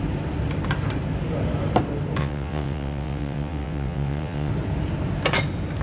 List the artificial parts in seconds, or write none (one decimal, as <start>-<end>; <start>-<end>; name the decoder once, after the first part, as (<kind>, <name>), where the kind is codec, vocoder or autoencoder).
2.2-4.5 (vocoder, WaveNeXt)

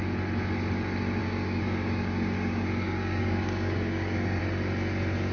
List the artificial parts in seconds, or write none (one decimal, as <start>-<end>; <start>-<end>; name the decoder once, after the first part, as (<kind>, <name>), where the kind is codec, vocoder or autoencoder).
1.2-4.4 (codec, DAC)

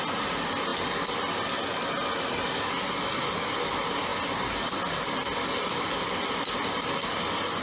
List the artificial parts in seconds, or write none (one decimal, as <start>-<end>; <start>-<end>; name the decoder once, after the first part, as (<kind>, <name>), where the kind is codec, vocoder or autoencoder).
none

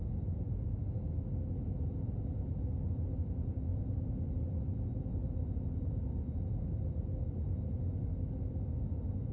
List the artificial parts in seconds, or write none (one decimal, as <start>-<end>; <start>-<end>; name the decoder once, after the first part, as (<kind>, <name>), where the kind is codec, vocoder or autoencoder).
none

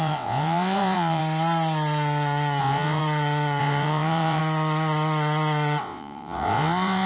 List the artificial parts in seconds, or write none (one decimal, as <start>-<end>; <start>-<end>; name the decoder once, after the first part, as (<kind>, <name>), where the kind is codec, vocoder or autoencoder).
0.0-1.2 (vocoder, WaveNeXt); 2.6-3.0; 3.6-4.4; 5.8-7.1

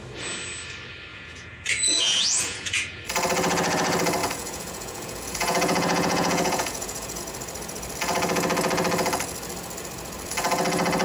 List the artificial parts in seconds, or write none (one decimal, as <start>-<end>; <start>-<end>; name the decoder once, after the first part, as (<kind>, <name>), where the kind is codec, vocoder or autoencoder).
1.1-3.0 (vocoder, Vocos); 4.2-7.2